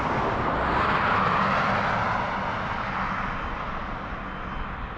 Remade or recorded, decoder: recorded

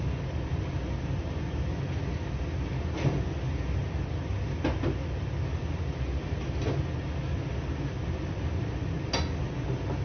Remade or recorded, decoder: recorded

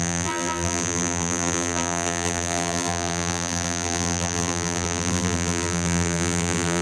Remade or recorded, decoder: remade, vocoder, BigVGAN v2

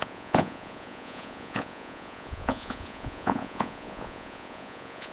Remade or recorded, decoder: remade, vocoder, Vocos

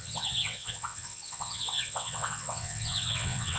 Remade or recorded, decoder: remade, vocoder, WaveNeXt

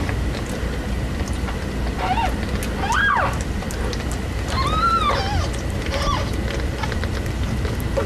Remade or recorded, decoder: recorded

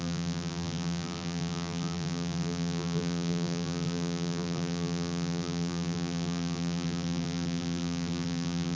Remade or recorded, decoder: remade, vocoder, BigVGAN v2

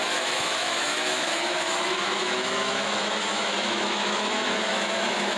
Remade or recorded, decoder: remade, autoencoder, DAC-VAE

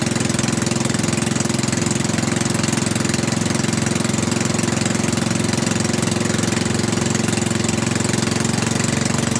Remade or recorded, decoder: recorded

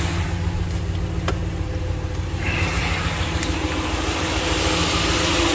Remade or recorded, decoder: recorded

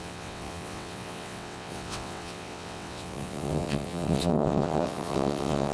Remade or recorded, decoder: remade, vocoder, WaveNeXt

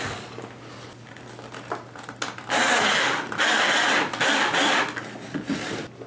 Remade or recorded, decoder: recorded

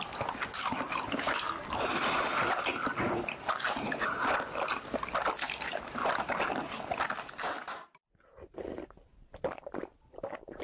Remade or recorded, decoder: recorded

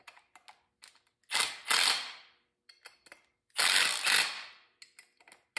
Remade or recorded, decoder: recorded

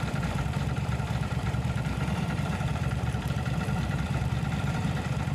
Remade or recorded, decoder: remade, vocoder, BigVGAN v2